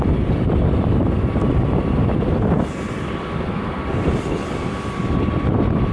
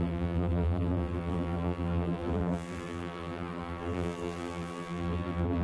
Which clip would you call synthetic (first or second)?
second